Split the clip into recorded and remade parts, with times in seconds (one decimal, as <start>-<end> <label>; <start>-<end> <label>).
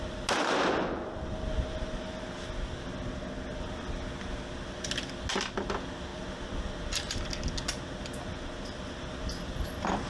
0.0-10.1 recorded